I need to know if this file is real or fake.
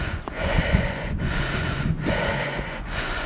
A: fake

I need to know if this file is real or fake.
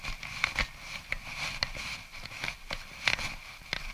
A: real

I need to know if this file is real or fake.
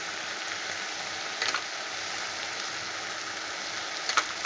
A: real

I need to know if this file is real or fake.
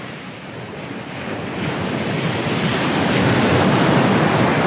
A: real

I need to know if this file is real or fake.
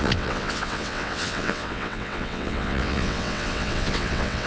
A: fake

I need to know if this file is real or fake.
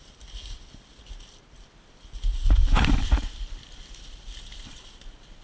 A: real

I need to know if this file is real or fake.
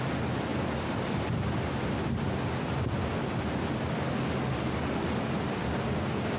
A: real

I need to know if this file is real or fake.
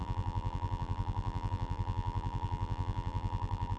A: fake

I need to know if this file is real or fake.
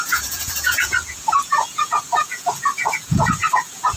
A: fake